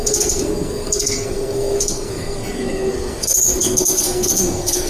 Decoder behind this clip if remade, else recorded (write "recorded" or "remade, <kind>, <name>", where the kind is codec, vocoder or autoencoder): remade, codec, SNAC